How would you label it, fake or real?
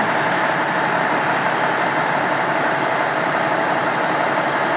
real